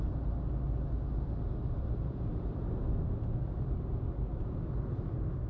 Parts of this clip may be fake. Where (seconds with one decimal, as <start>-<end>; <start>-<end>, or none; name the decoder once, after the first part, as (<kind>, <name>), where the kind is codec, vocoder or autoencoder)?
none